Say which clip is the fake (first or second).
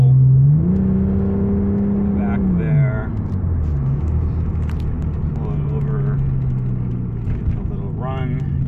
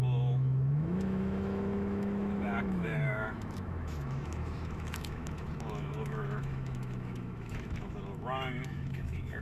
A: second